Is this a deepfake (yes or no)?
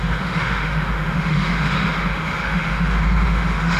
yes